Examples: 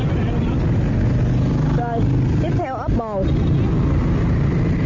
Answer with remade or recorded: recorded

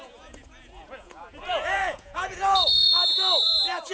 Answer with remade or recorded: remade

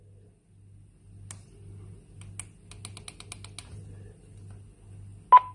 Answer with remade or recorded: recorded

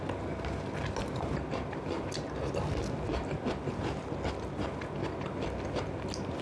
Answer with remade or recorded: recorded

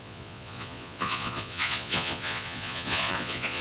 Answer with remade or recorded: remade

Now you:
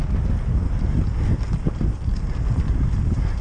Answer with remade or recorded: recorded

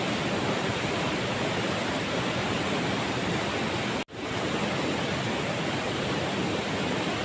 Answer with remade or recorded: recorded